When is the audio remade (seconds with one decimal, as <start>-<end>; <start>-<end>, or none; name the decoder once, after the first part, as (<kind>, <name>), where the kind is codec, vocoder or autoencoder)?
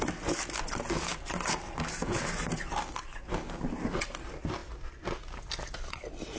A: none